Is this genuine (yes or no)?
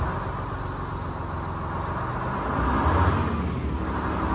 yes